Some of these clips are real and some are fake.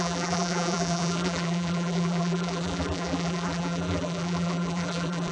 fake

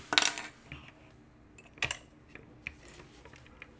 real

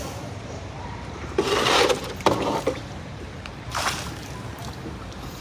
fake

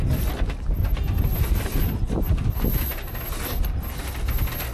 real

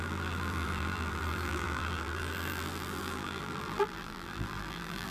fake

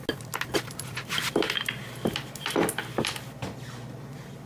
real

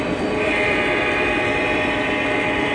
fake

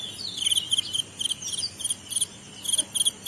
real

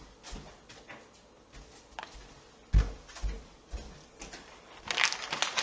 real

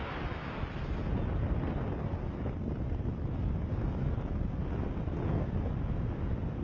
real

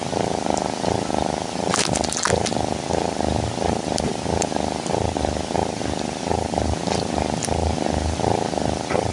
real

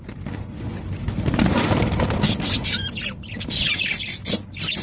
real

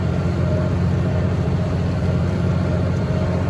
fake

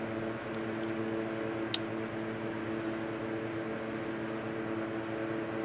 real